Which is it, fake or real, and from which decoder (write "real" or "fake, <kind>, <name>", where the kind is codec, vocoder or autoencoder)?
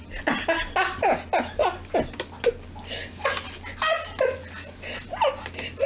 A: real